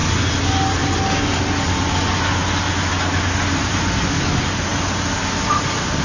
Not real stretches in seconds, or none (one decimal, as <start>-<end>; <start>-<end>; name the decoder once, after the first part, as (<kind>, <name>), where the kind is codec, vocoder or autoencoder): none